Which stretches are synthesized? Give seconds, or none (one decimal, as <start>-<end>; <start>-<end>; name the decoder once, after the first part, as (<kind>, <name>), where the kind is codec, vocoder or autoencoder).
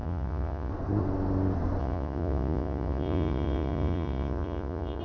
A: 0.0-0.7 (vocoder, Vocos); 1.8-5.0